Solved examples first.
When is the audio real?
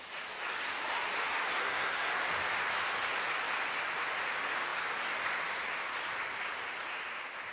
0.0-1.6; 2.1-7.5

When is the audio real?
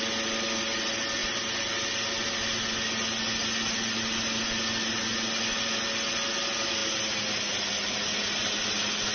0.0-9.1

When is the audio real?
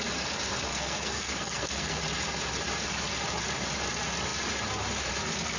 0.0-0.7; 2.0-5.6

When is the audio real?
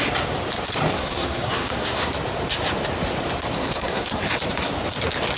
0.0-0.9; 2.1-3.6; 4.2-5.4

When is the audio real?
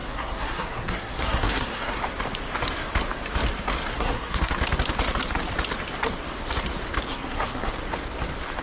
2.0-3.9; 4.5-7.1; 7.7-8.6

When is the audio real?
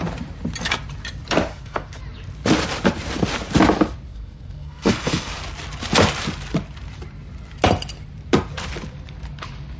0.0-1.5; 2.0-4.1; 5.3-9.8